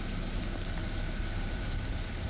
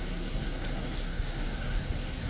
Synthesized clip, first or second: second